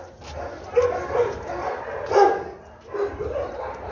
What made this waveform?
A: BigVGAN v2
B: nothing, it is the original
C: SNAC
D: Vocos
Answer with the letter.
B